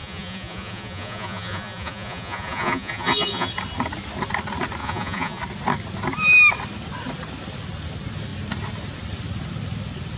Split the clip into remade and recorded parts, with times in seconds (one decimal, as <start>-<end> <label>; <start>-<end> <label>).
0.0-3.5 remade; 3.5-4.8 recorded; 4.8-5.4 remade; 5.4-10.2 recorded